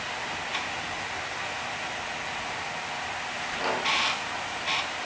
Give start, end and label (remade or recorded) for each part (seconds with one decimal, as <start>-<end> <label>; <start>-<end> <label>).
0.0-5.1 recorded